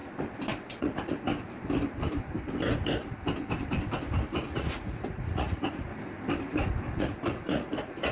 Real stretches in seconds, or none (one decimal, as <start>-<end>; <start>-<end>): 0.0-0.8; 1.3-4.3; 5.9-7.0